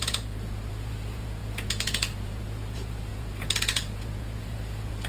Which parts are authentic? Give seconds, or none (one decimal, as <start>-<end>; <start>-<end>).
none